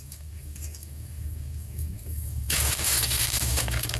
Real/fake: fake